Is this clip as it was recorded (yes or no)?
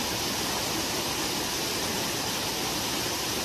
yes